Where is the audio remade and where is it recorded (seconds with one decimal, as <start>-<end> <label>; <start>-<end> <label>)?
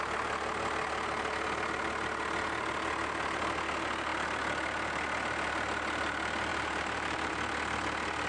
0.0-6.5 recorded; 6.5-7.3 remade; 7.3-8.3 recorded